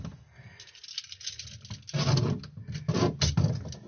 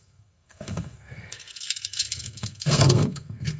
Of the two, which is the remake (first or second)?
second